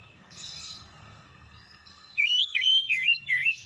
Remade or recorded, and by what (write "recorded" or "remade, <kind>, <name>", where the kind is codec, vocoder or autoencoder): remade, codec, SNAC